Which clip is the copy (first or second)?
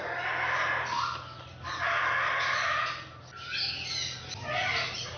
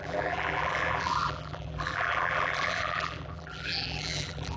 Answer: second